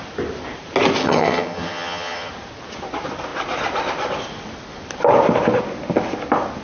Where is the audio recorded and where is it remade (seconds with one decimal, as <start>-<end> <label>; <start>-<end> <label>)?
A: 0.0-1.0 recorded; 1.0-2.3 remade; 2.3-6.6 recorded

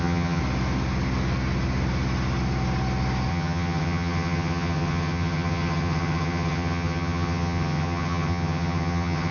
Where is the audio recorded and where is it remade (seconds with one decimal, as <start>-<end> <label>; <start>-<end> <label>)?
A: 0.0-0.4 remade; 0.4-3.3 recorded; 3.3-9.3 remade

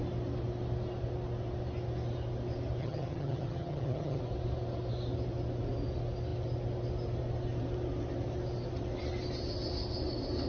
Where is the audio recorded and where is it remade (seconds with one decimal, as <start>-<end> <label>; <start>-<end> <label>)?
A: 0.0-2.8 recorded; 2.8-4.2 remade; 4.2-10.5 recorded